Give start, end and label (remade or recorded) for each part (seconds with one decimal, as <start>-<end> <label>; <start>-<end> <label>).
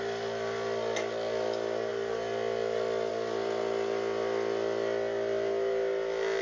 0.0-6.4 recorded